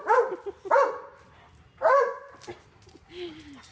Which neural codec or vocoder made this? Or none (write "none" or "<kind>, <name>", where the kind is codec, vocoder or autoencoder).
none